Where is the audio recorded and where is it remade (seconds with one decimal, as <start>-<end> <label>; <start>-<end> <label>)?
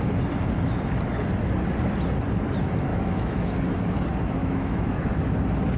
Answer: 0.0-2.9 recorded; 2.9-3.5 remade; 3.5-4.4 recorded; 4.4-5.1 remade; 5.1-5.8 recorded